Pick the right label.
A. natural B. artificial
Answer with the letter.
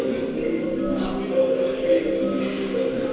A